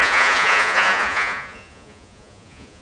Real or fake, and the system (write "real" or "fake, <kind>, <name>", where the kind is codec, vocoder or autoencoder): fake, vocoder, Vocos